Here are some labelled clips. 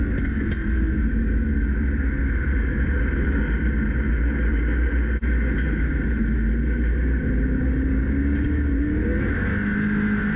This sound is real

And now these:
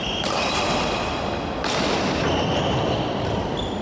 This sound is fake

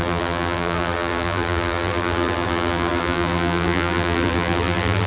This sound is fake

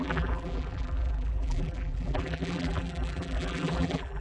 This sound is fake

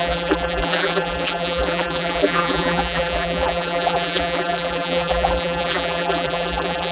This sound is fake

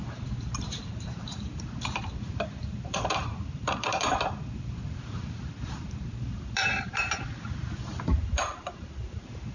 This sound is fake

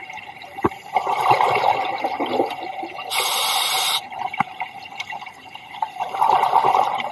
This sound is fake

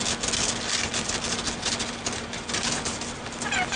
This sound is real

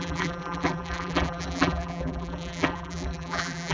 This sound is fake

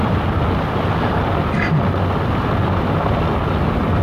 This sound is real